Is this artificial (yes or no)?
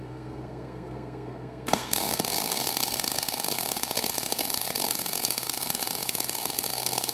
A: yes